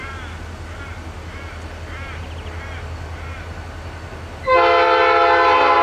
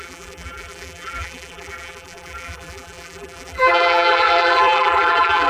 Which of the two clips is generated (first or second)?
second